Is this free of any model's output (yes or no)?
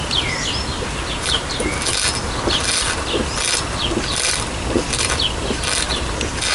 yes